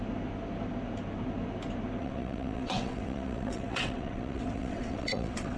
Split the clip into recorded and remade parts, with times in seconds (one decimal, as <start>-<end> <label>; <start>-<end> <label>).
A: 0.0-2.0 recorded; 2.0-5.6 remade